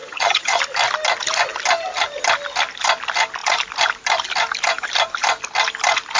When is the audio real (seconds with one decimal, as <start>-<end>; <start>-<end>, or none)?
0.6-6.2

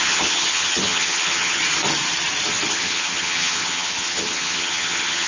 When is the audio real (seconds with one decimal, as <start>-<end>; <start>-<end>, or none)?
1.6-2.7

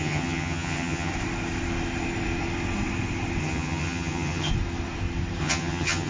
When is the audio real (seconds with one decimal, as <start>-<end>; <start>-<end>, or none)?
1.1-3.4; 4.5-5.4

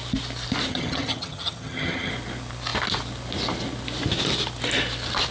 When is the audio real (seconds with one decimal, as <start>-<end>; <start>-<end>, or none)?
0.0-0.7; 2.1-5.3

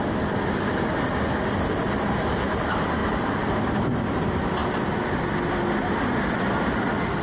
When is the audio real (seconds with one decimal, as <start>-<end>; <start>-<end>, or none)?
0.0-7.2